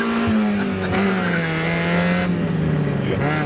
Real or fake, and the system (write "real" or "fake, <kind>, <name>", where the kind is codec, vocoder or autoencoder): real